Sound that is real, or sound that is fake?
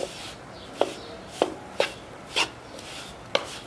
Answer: real